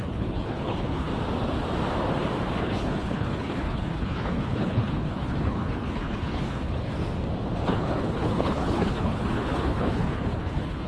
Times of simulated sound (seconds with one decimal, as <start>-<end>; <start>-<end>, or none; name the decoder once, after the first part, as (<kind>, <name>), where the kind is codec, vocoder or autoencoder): 0.0-1.1 (codec, HILCodec); 2.6-6.9; 7.7-10.9